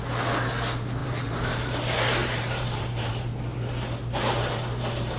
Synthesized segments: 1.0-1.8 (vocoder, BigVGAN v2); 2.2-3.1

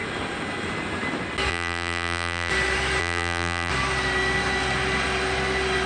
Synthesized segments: 1.5-2.5 (vocoder, BigVGAN v2); 3.0-3.7